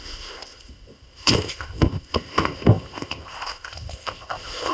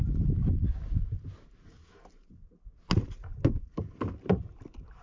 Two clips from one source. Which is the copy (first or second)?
first